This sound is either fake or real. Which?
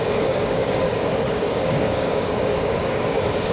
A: fake